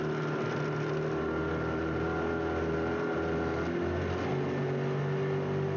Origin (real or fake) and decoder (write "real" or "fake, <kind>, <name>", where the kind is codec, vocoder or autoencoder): real